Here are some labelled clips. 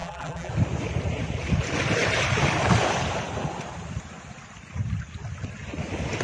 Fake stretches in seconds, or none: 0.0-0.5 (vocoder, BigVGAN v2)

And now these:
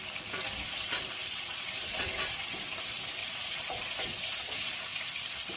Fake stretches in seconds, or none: 1.2-2.2 (vocoder, Vocos); 3.2-4.7

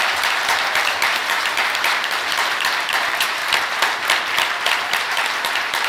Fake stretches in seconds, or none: 0.0-3.4 (vocoder, BigVGAN v2); 5.0-5.9

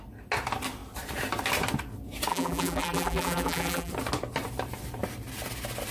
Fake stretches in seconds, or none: 2.3-3.9 (vocoder, BigVGAN v2)

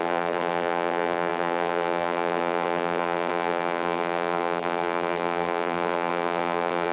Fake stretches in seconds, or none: 0.0-6.9 (vocoder, BigVGAN v2)